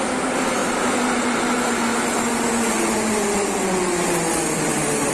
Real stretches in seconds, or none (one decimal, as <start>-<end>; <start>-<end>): 0.0-5.1